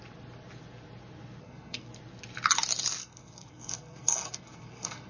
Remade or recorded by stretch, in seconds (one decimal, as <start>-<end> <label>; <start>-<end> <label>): 0.0-1.4 recorded; 1.4-1.9 remade; 1.9-3.0 recorded; 3.0-5.1 remade

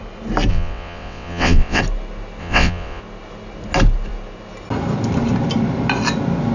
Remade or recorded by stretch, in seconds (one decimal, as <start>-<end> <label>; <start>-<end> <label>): 0.0-0.5 recorded; 0.5-1.8 remade; 1.8-2.4 recorded; 2.4-3.0 remade; 3.0-6.5 recorded